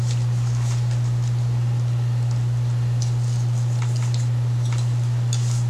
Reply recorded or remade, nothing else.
recorded